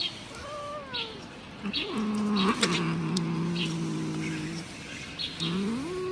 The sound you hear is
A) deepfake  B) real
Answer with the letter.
B